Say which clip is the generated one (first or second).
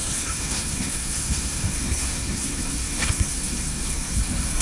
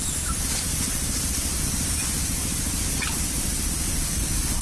first